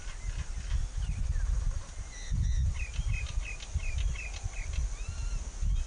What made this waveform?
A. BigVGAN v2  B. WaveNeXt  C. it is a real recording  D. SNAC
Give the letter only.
C